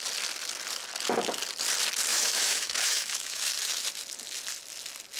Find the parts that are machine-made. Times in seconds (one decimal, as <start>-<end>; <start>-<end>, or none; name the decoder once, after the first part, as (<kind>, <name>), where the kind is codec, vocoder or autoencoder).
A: 2.1-3.5 (autoencoder, DAC-VAE)